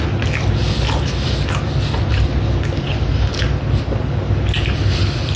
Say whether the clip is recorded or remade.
recorded